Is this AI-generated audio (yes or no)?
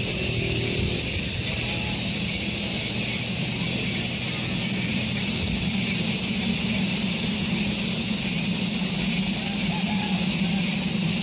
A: no